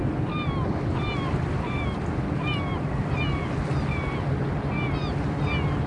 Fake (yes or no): no